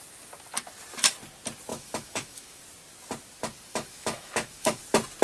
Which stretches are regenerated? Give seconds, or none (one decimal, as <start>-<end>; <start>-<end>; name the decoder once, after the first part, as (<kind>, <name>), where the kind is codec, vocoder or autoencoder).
1.7-2.6 (autoencoder, DAC-VAE); 3.7-4.8